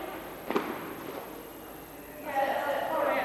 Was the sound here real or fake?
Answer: real